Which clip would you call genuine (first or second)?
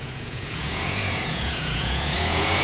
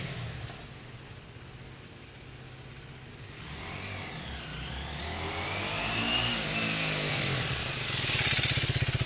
second